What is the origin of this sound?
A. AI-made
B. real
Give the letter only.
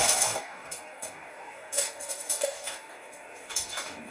A